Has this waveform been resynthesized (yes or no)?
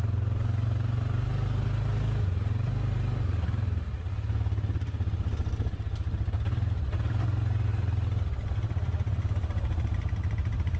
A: no